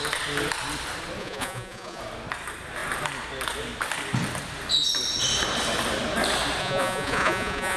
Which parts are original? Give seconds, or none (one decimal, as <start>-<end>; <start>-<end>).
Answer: 0.0-1.2; 2.0-6.6